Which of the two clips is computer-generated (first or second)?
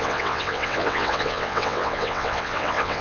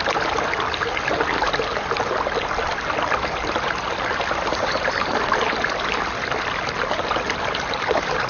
first